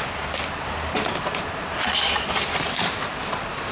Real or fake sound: real